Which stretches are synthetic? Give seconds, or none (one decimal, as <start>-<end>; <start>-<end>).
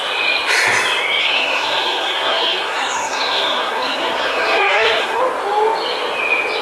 1.2-5.2